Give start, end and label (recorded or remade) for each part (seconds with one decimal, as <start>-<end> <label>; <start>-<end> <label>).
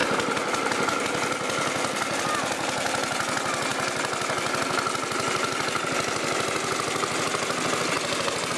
0.0-8.6 recorded